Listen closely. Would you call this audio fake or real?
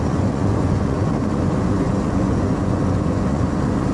fake